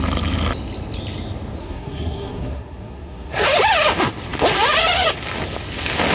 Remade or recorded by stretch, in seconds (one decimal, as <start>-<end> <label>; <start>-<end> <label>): 0.0-1.6 recorded; 1.6-3.4 remade; 3.4-6.1 recorded

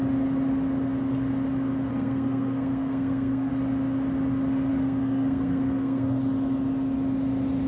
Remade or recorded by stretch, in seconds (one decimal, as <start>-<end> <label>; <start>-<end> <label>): 0.0-1.9 recorded; 1.9-3.5 remade; 3.5-4.7 recorded; 4.7-6.2 remade; 6.2-7.7 recorded

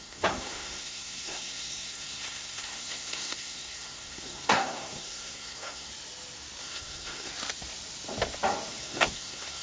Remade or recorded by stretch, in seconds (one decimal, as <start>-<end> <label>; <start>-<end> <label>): 0.0-5.9 remade; 5.9-6.6 recorded; 6.6-7.3 remade; 7.3-8.8 recorded; 8.8-9.6 remade

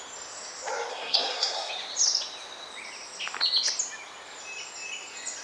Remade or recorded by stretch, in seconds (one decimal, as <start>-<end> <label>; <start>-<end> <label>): 0.0-0.9 recorded; 0.9-1.7 remade; 1.7-5.4 recorded

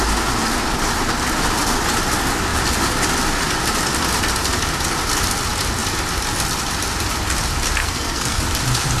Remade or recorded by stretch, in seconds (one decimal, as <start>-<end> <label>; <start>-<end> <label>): 0.0-7.8 recorded; 7.8-8.4 remade; 8.4-9.0 recorded

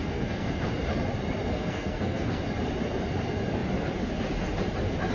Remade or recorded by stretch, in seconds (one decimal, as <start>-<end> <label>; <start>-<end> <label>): 0.0-0.7 remade; 0.7-1.5 recorded; 1.5-2.4 remade; 2.4-5.1 recorded

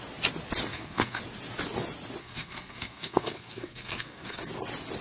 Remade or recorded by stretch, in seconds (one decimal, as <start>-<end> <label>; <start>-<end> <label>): 0.0-0.7 recorded; 0.7-1.2 remade; 1.2-2.2 recorded; 2.2-4.4 remade; 4.4-5.0 recorded